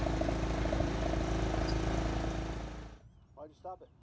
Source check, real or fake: real